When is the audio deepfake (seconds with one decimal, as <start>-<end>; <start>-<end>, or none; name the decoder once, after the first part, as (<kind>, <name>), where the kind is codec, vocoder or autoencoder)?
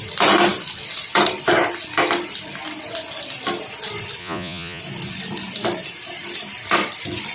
4.2-4.8 (vocoder, Vocos)